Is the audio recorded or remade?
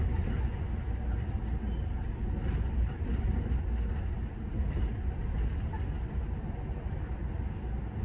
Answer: recorded